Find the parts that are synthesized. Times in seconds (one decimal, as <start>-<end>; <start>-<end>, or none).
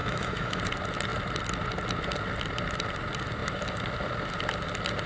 0.0-0.6